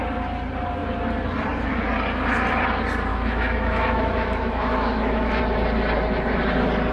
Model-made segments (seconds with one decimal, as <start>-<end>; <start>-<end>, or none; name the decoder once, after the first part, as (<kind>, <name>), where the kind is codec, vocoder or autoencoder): 3.1-5.4 (autoencoder, DAC-VAE)